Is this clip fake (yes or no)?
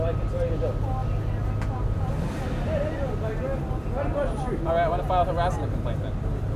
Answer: no